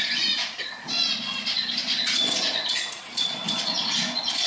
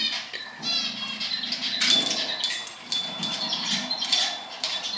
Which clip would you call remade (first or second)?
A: first